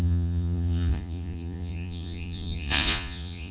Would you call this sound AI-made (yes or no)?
yes